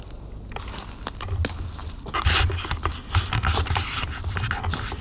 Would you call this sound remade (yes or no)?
no